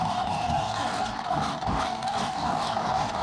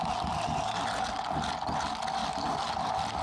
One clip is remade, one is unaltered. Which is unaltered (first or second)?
second